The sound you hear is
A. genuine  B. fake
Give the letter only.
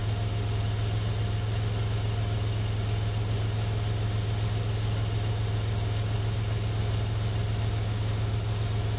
A